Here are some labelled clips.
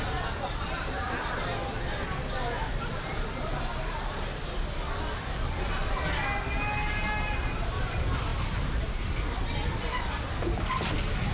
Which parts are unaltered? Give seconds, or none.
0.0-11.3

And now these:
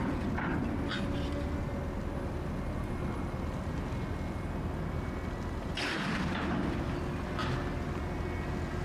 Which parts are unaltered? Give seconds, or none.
0.0-8.8

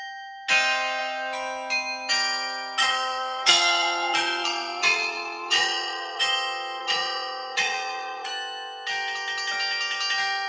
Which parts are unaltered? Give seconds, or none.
0.0-2.8; 6.2-6.8; 8.3-10.5

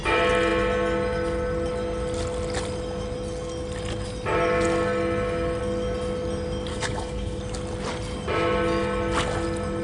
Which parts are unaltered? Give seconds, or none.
0.0-6.7; 7.4-9.8

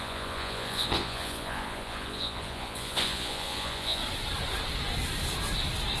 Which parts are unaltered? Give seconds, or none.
4.0-6.0

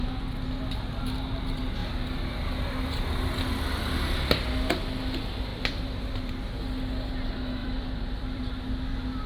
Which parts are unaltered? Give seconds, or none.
0.0-5.5; 6.3-7.6; 8.6-9.3

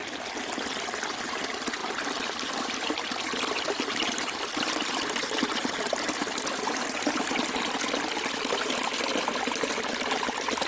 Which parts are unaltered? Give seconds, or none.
0.0-10.7